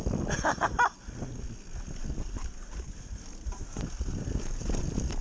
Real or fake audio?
real